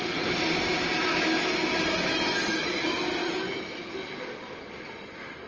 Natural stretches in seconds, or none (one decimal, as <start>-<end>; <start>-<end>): 0.0-1.1; 2.6-3.2; 3.8-5.5